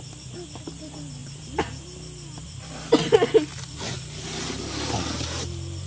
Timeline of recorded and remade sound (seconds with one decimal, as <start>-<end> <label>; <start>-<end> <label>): 0.0-1.2 recorded; 1.2-4.7 remade; 4.7-5.9 recorded